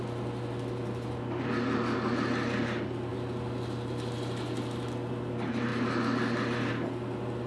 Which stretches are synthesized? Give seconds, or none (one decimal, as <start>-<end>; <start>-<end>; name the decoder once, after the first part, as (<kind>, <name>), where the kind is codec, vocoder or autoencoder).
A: none